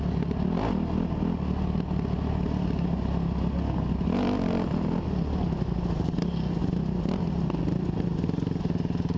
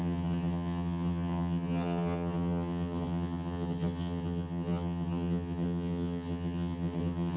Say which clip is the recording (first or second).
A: first